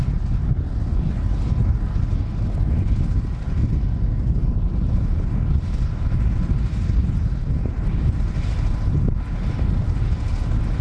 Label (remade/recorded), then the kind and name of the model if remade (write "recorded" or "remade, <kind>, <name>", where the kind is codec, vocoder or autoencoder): recorded